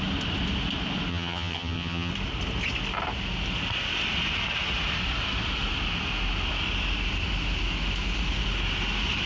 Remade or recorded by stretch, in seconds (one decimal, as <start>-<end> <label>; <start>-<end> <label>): 0.0-1.1 recorded; 1.1-2.1 remade; 2.1-9.3 recorded